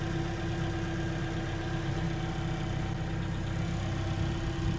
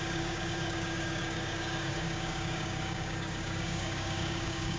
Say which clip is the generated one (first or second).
second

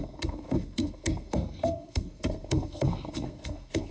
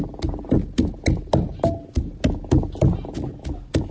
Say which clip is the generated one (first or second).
first